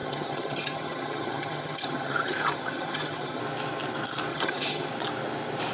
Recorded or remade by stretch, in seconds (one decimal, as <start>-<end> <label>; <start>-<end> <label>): 0.0-3.4 remade; 3.4-4.3 recorded; 4.3-4.9 remade; 4.9-5.7 recorded